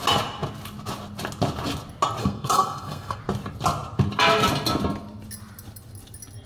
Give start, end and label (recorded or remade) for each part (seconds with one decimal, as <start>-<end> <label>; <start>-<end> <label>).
0.0-2.2 recorded; 2.2-3.2 remade; 3.2-6.5 recorded